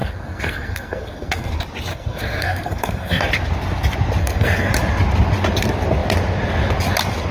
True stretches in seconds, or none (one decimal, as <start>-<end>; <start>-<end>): 1.5-1.9; 3.3-4.2; 4.7-7.3